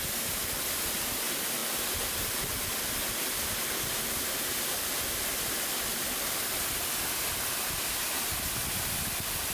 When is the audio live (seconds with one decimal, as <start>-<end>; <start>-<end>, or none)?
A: 0.0-9.5

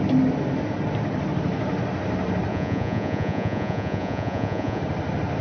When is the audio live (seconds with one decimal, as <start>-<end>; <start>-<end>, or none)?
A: 0.0-2.5; 4.8-5.4

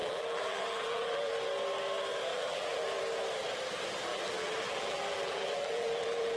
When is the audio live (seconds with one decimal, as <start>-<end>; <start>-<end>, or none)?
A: 1.3-2.3; 3.0-4.1

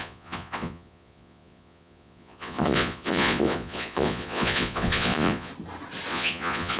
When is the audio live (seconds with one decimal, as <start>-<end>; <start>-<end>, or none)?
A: 5.5-6.1

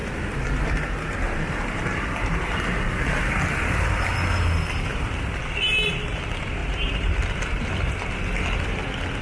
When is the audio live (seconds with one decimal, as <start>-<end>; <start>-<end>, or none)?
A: 4.0-4.9; 5.4-6.6; 7.9-9.2

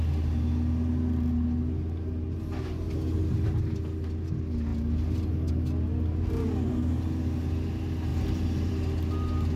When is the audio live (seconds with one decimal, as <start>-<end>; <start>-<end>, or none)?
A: 0.0-9.6